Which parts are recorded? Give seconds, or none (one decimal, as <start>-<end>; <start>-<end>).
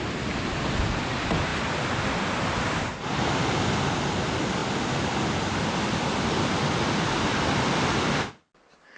0.0-9.0